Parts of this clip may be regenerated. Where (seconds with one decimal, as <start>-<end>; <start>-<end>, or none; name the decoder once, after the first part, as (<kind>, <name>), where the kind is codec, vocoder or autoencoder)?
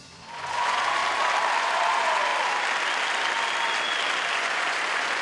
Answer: 0.0-1.0 (vocoder, Vocos); 1.6-2.3; 4.3-5.2